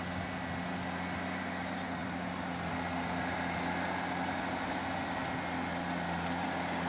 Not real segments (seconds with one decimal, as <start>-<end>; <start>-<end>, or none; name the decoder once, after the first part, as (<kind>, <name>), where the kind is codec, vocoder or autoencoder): 2.0-2.7 (vocoder, BigVGAN v2)